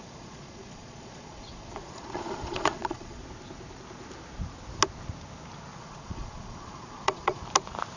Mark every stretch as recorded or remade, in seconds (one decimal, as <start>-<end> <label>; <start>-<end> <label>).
0.0-3.2 remade; 3.2-5.7 recorded; 5.7-7.4 remade; 7.4-8.0 recorded